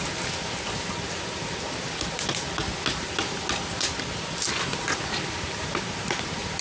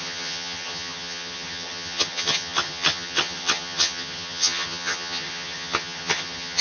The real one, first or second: first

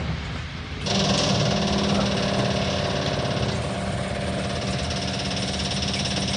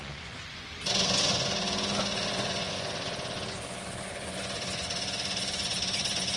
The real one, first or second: first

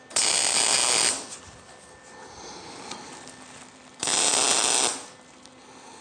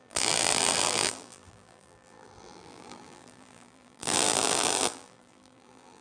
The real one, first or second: first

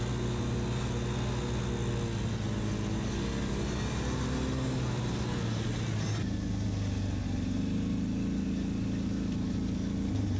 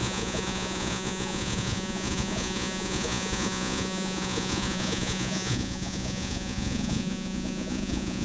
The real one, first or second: first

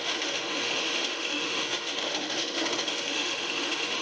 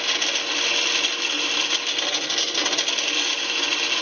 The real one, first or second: second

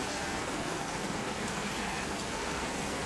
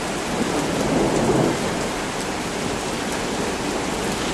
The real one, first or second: second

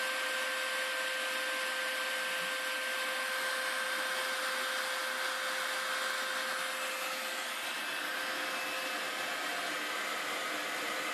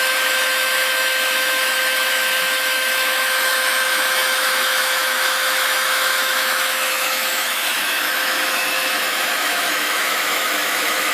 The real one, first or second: first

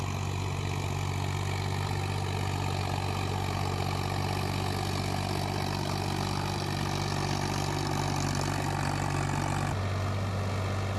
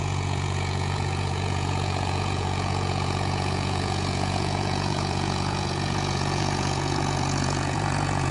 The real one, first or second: first